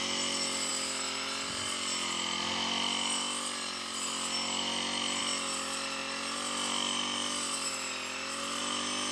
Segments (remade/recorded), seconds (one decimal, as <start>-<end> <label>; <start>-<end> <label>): 0.0-9.1 recorded